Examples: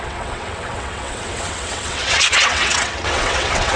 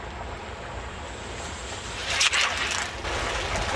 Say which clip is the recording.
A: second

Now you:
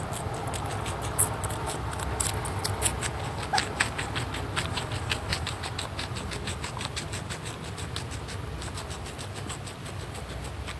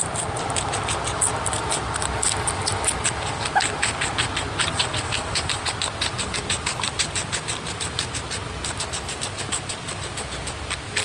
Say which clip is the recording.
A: first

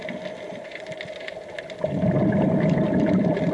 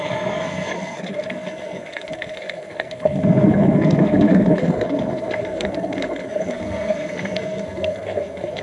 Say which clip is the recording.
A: first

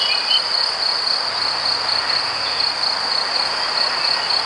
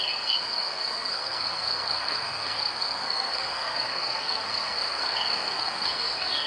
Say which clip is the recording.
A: first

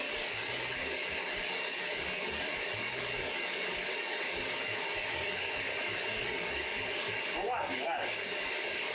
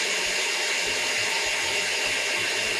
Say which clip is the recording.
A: second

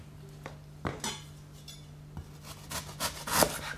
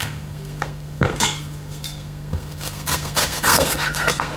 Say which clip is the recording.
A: first